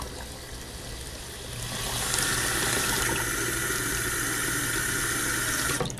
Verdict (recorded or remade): recorded